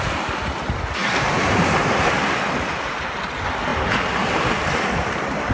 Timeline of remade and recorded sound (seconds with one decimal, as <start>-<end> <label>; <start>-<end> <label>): 0.0-1.0 recorded; 1.0-2.0 remade; 2.0-3.7 recorded; 3.7-4.6 remade; 4.6-5.5 recorded